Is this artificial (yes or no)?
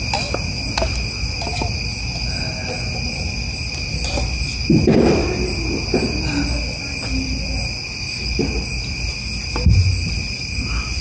no